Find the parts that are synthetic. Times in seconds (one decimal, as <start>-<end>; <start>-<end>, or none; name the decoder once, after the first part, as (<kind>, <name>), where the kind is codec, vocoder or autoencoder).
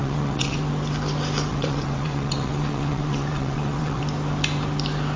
0.0-0.6 (vocoder, WaveNeXt); 1.5-4.0